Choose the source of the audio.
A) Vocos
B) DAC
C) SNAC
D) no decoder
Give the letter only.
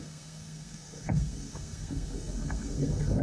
C